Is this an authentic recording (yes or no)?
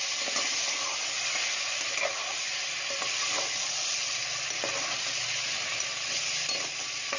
yes